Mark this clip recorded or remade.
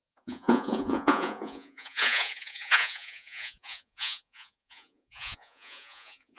remade